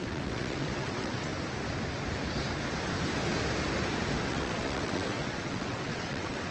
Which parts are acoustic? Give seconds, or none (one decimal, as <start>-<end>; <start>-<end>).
1.3-4.3